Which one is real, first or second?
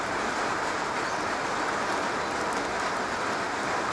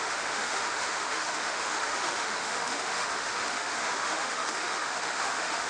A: first